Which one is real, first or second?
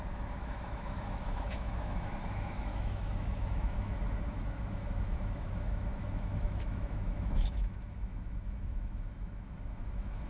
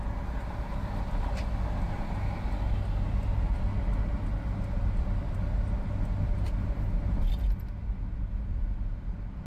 second